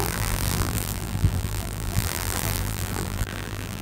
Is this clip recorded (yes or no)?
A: no